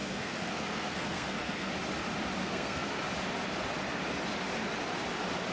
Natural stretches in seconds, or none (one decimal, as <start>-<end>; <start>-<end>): 1.7-2.4; 3.0-5.5